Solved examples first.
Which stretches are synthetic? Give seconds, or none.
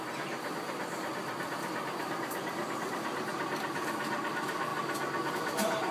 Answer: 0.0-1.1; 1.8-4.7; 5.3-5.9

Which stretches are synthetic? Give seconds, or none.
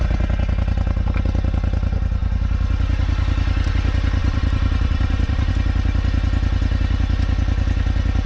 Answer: 4.2-5.5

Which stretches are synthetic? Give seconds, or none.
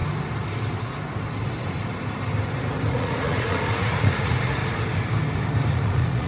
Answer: 2.9-4.6; 5.7-6.3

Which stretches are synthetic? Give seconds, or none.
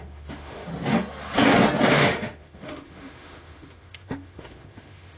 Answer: 0.0-0.7; 1.9-5.2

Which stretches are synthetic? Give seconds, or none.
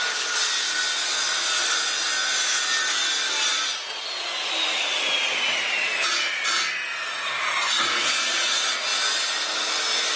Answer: none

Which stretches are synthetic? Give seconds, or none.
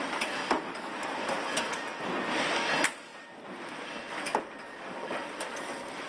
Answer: none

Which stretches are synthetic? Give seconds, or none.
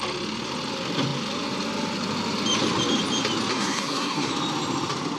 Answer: 3.5-4.3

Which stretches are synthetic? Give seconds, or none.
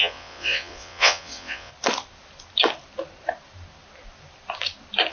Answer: 0.0-1.7